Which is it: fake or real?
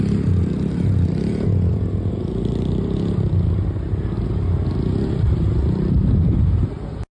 real